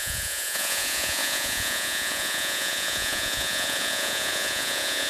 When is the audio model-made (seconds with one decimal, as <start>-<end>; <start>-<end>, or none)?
0.0-5.1